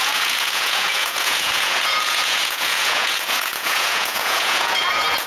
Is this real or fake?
fake